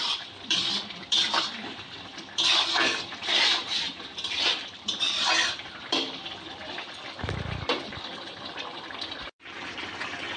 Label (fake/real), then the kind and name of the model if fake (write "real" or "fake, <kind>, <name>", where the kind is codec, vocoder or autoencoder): fake, vocoder, BigVGAN v2